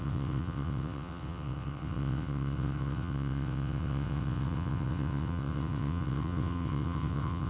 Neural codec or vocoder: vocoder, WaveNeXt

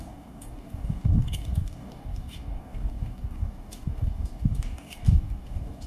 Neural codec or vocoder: codec, DAC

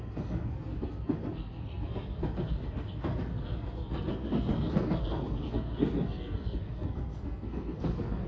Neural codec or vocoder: codec, SNAC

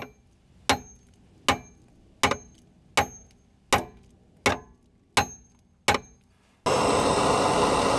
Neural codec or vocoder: none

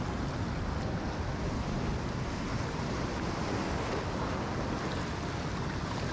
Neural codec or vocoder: none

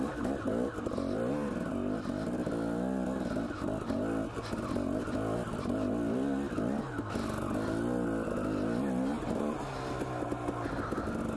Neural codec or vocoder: none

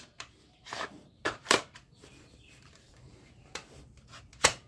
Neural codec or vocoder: vocoder, BigVGAN v2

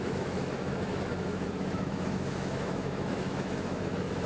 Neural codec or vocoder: autoencoder, DAC-VAE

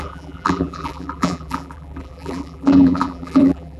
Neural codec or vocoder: vocoder, BigVGAN v2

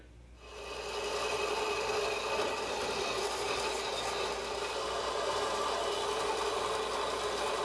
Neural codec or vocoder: none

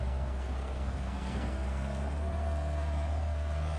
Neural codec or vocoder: codec, SNAC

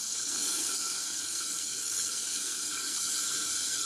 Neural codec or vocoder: codec, SNAC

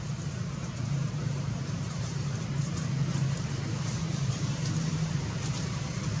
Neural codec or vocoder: vocoder, BigVGAN v2